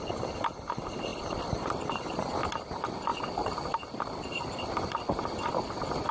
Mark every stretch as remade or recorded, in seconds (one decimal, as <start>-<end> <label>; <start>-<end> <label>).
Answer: 0.0-6.1 recorded

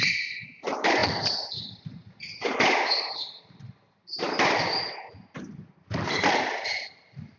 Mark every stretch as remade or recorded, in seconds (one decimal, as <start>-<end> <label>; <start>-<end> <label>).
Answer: 0.0-7.4 recorded

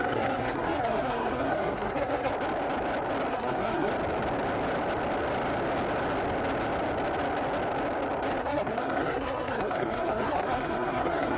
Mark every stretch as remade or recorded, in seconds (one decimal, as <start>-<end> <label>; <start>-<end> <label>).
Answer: 0.0-2.3 remade; 2.3-3.3 recorded; 3.3-3.9 remade; 3.9-8.4 recorded; 8.4-11.4 remade

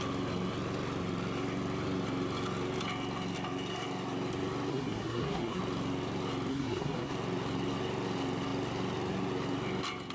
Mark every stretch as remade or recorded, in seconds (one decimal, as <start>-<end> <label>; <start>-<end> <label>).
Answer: 0.0-4.7 recorded; 4.7-5.6 remade; 5.6-6.5 recorded; 6.5-7.1 remade; 7.1-10.1 recorded

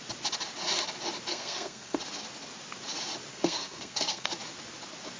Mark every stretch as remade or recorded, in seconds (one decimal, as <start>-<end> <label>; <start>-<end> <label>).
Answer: 0.0-1.3 recorded; 1.3-2.0 remade; 2.0-3.3 recorded; 3.3-4.3 remade; 4.3-5.2 recorded

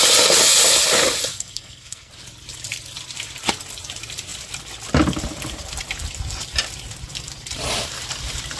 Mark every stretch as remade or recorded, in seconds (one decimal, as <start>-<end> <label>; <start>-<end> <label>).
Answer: 0.0-1.3 recorded; 1.3-2.1 remade; 2.1-8.6 recorded

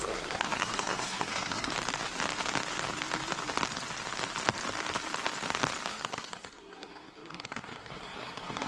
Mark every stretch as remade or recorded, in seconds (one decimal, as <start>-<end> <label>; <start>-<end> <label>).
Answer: 0.0-1.7 remade; 1.7-5.9 recorded; 5.9-8.7 remade